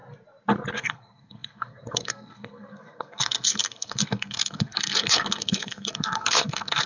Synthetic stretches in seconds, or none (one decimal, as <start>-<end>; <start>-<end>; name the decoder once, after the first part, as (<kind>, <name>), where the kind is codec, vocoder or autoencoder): 0.7-6.9 (codec, SNAC)